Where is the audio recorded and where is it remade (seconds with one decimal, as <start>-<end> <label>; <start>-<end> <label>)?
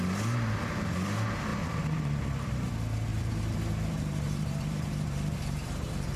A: 0.0-1.5 recorded; 1.5-2.7 remade; 2.7-3.1 recorded; 3.1-6.2 remade